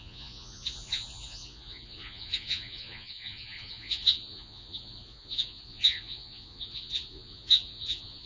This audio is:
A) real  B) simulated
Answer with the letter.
B